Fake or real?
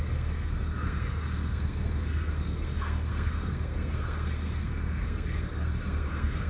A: fake